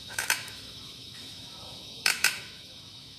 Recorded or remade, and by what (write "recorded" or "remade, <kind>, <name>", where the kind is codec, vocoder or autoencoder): remade, autoencoder, DAC-VAE